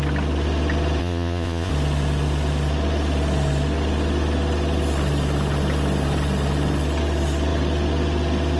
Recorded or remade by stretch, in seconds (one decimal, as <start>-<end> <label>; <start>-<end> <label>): 0.0-1.0 recorded; 1.0-1.7 remade; 1.7-8.6 recorded